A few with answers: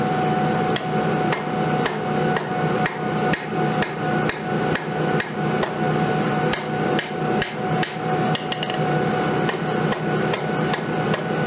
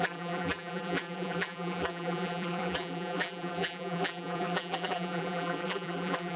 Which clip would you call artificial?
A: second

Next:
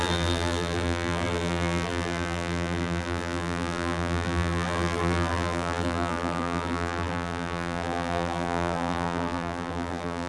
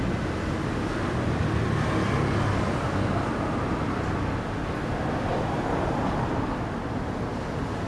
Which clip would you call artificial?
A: first